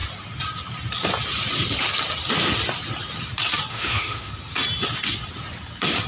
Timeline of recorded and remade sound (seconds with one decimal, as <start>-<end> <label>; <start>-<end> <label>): 0.0-3.7 recorded; 3.7-4.3 remade; 4.3-6.1 recorded